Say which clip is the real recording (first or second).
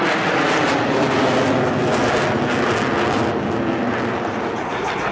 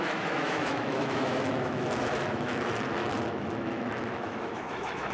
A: first